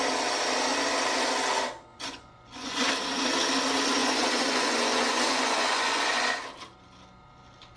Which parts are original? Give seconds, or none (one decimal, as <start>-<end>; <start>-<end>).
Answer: 0.0-1.9; 2.9-4.0; 6.3-7.8